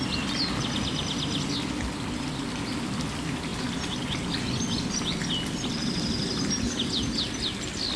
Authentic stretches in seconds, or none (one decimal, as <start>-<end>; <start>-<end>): 0.0-8.0